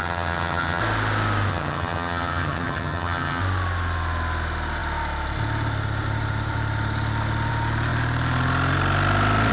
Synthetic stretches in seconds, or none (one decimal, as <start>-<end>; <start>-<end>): 0.0-0.8; 1.5-3.4